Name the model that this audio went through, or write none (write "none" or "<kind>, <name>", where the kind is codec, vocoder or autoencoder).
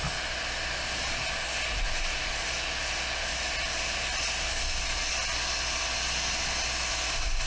none